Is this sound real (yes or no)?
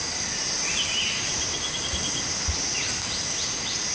yes